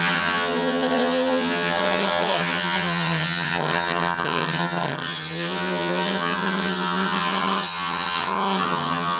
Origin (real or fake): fake